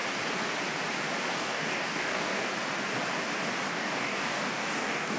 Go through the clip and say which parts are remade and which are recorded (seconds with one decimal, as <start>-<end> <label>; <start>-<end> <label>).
0.0-1.3 recorded; 1.3-2.5 remade; 2.5-3.7 recorded; 3.7-5.2 remade